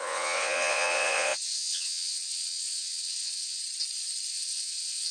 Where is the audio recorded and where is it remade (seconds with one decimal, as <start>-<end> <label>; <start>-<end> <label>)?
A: 0.0-3.6 remade; 3.6-4.3 recorded; 4.3-5.1 remade